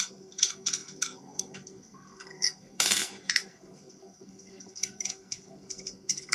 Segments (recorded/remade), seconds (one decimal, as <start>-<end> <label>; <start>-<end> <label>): 0.0-6.3 remade